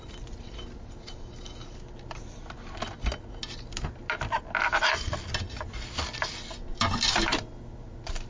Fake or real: real